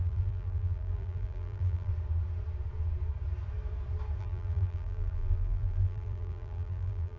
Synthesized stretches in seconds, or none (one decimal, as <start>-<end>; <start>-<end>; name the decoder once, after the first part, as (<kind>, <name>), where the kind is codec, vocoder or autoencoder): 0.0-1.9 (vocoder, BigVGAN v2); 4.2-7.2